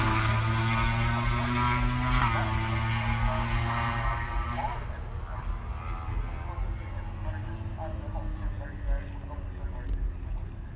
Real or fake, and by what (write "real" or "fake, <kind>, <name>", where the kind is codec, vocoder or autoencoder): real